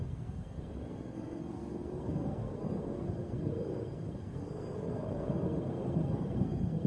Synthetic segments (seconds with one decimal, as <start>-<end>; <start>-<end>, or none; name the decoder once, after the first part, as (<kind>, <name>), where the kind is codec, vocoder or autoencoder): 0.0-6.9 (codec, SNAC)